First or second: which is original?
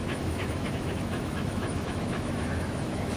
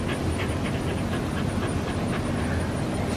second